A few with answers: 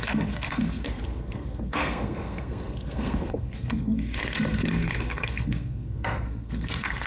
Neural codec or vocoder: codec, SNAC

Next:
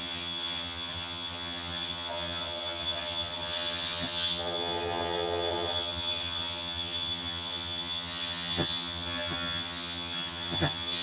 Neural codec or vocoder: vocoder, HiFi-GAN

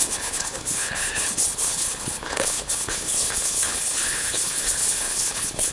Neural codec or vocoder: codec, HILCodec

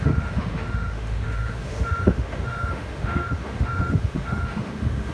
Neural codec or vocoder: autoencoder, DAC-VAE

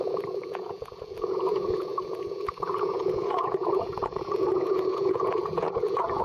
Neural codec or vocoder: vocoder, Vocos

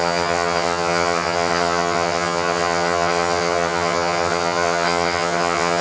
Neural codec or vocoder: vocoder, HiFi-GAN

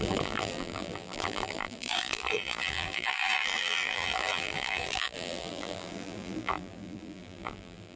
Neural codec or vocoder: vocoder, BigVGAN v2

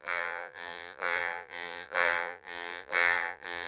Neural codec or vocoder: vocoder, BigVGAN v2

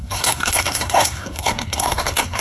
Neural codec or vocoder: codec, SNAC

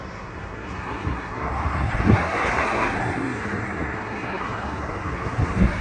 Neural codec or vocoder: codec, SNAC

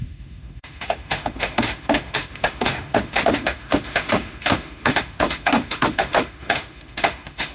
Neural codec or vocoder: autoencoder, DAC-VAE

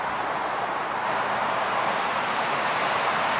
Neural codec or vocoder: vocoder, BigVGAN v2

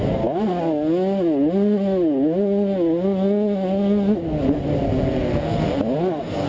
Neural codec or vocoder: none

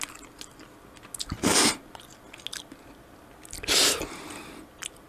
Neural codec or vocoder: none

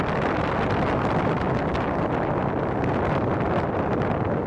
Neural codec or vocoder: none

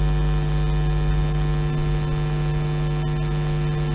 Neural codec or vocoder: none